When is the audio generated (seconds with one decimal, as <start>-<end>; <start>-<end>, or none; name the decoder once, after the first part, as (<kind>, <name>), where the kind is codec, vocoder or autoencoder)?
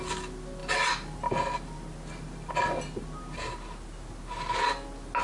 none